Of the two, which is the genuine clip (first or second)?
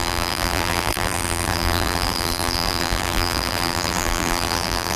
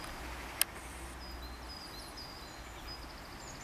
second